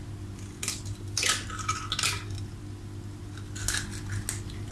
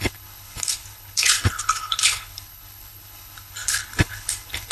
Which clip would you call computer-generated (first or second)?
second